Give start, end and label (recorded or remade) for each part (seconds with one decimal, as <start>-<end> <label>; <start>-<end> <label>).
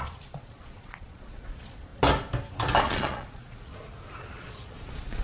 0.0-1.9 remade; 1.9-2.8 recorded; 2.8-3.7 remade; 3.7-4.3 recorded; 4.3-5.2 remade